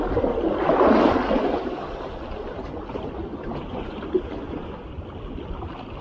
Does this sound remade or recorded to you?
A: recorded